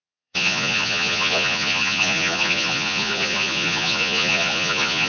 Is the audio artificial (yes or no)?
yes